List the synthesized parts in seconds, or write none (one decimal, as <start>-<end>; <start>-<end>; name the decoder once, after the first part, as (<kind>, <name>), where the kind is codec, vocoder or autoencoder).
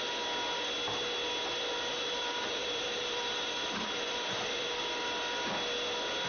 1.9-4.8 (vocoder, BigVGAN v2)